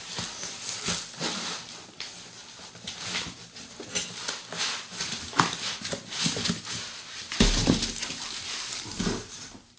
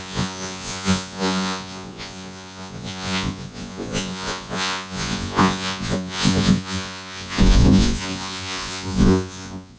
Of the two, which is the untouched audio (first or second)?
first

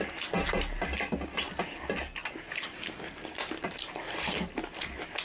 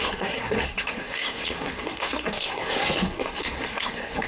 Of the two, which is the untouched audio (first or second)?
first